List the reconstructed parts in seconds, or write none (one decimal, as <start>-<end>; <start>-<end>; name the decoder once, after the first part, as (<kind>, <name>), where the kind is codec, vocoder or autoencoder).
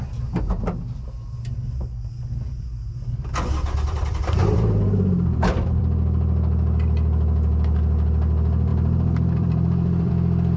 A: 4.4-5.8 (vocoder, BigVGAN v2); 8.7-10.1